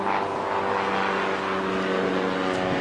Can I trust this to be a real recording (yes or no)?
yes